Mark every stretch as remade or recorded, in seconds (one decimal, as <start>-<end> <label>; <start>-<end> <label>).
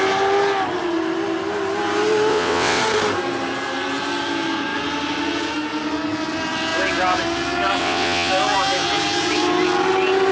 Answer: 0.0-2.3 recorded; 2.3-2.8 remade; 2.8-7.8 recorded; 7.8-8.3 remade; 8.3-10.3 recorded